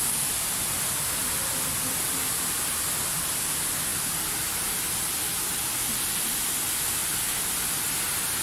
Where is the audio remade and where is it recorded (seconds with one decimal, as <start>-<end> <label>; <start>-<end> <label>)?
0.0-1.2 recorded; 1.2-3.2 remade; 3.2-3.9 recorded; 3.9-5.0 remade; 5.0-7.0 recorded; 7.0-7.8 remade; 7.8-8.4 recorded